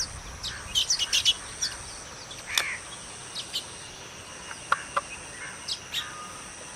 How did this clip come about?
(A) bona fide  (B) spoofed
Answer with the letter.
A